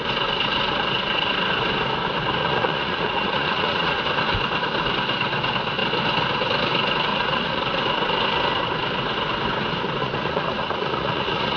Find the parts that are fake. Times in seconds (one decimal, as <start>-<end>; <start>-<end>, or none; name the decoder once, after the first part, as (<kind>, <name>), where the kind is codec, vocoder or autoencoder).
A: 2.4-4.0 (vocoder, Vocos); 7.1-7.6; 10.0-11.6